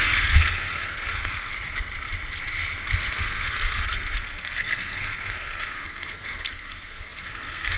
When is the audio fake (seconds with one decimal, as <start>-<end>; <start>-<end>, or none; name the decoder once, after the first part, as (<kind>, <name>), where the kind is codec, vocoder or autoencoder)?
0.0-1.5 (codec, SNAC); 3.1-7.8